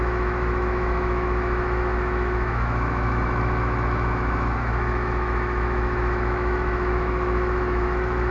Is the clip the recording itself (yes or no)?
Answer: no